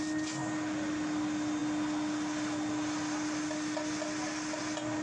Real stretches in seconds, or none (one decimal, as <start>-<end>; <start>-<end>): 0.0-5.0